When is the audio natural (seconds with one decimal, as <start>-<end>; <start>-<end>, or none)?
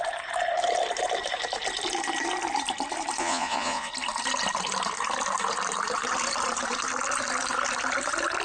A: 0.0-3.2; 3.9-8.4